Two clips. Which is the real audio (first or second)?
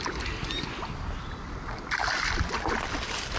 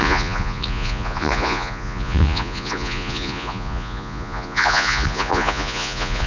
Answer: first